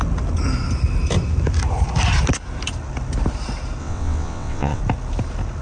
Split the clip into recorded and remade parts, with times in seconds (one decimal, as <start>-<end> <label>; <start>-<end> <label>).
0.0-3.8 recorded; 3.8-4.8 remade; 4.8-5.6 recorded